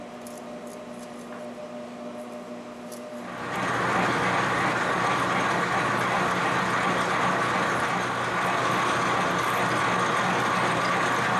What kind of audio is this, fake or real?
real